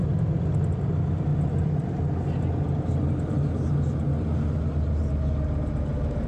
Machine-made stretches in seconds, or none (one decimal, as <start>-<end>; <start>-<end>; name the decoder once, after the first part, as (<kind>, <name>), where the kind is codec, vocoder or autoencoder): none